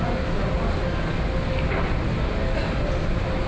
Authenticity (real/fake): real